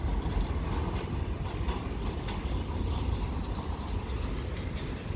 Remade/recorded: recorded